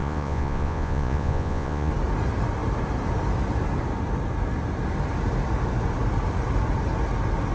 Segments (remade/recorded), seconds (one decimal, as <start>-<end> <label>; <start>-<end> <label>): 0.0-1.9 remade; 1.9-7.5 recorded